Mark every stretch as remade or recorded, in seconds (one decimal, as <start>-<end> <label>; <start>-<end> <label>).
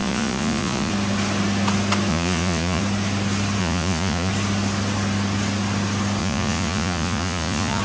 0.0-0.9 remade; 0.9-2.1 recorded; 2.1-2.8 remade; 2.8-3.6 recorded; 3.6-4.3 remade; 4.3-6.2 recorded; 6.2-7.8 remade